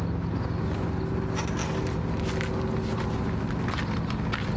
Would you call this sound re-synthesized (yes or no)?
no